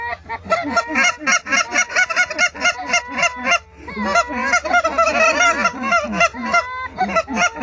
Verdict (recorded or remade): recorded